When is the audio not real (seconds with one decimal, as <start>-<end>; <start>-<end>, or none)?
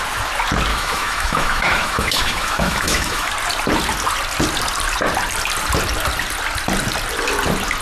0.7-3.3